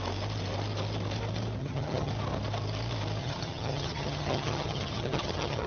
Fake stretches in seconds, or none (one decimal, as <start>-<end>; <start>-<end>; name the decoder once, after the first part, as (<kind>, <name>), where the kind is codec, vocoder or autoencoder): 1.6-2.1 (vocoder, HiFi-GAN); 3.2-5.7